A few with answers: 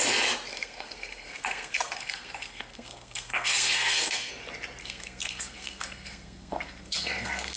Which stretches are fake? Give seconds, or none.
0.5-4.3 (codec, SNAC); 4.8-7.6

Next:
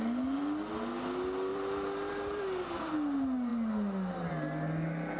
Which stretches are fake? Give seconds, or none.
1.5-2.4 (vocoder, BigVGAN v2)

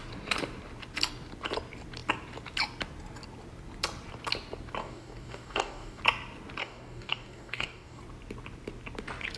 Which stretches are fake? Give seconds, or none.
4.8-6.0 (codec, DAC); 6.6-8.0

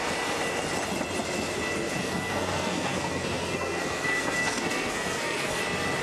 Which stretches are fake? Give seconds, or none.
2.0-5.6 (codec, SNAC)

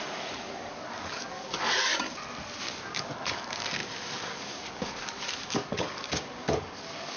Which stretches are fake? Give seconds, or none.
0.0-1.9 (codec, DAC); 2.6-7.2

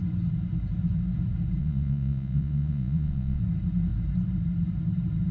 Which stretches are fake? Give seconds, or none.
1.6-3.4 (vocoder, Vocos)

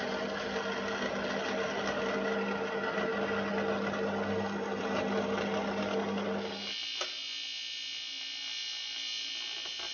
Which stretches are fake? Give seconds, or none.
none

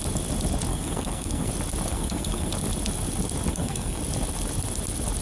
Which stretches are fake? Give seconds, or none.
0.7-1.5 (codec, SNAC); 1.9-2.5; 3.5-4.0